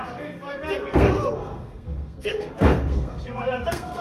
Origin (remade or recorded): remade